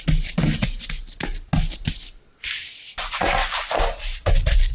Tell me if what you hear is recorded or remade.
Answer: recorded